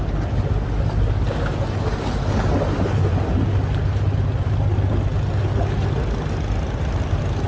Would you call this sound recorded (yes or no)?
yes